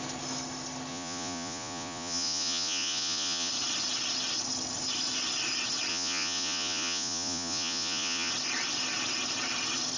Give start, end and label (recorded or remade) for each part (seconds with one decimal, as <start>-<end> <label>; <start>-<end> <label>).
0.0-0.9 recorded; 0.9-3.5 remade; 3.5-5.9 recorded; 5.9-8.3 remade; 8.3-10.0 recorded

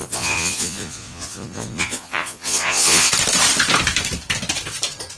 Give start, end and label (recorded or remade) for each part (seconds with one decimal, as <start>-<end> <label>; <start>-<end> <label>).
0.0-3.1 remade; 3.1-5.2 recorded